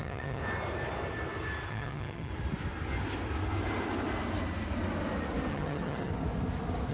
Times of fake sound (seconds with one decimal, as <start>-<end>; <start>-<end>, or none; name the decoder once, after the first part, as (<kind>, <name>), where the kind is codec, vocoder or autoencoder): 0.0-0.4 (vocoder, HiFi-GAN); 1.7-2.3; 5.5-6.1